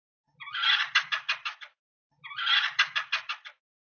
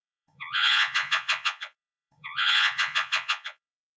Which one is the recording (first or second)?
first